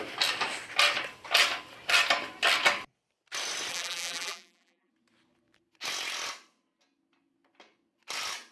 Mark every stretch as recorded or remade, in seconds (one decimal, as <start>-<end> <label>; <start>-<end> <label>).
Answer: 0.0-3.7 recorded; 3.7-4.9 remade; 4.9-8.5 recorded